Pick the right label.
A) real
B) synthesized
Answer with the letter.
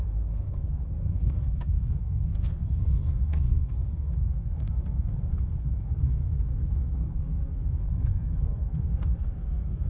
B